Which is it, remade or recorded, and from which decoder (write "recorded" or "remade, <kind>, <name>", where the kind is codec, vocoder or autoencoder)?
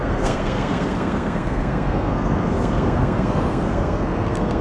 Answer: remade, codec, SNAC